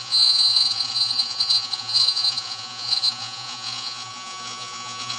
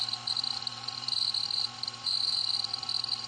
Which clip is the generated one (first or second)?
first